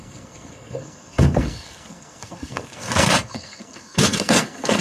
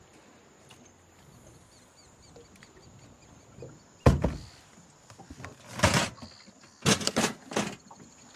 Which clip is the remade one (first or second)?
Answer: first